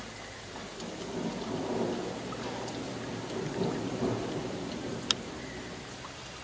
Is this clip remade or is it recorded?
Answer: recorded